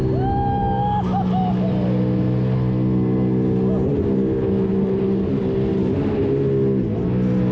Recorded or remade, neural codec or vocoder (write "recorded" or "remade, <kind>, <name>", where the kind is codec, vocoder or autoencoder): recorded